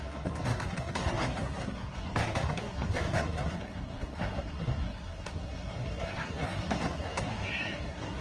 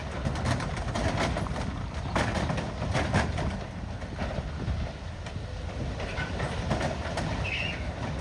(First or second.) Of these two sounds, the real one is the second